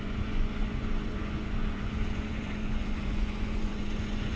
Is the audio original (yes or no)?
no